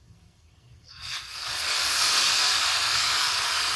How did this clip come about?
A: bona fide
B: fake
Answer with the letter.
B